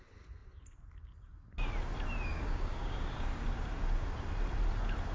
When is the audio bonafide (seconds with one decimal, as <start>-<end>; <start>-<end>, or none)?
0.0-2.3; 3.0-5.1